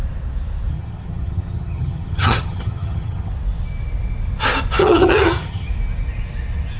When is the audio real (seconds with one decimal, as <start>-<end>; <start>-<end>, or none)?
0.0-0.7; 3.3-4.8; 5.7-6.8